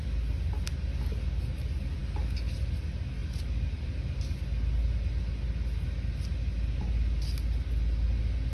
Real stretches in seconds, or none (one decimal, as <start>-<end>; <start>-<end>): 0.0-8.5